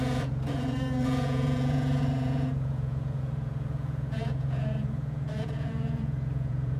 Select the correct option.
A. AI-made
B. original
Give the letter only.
A